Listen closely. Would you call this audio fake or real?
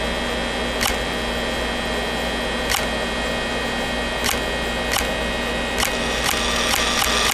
real